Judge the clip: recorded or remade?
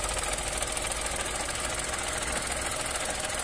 recorded